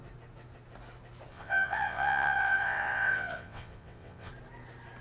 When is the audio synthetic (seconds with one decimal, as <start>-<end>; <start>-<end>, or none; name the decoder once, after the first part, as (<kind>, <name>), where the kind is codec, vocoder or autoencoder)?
1.3-4.3 (vocoder, WaveNeXt)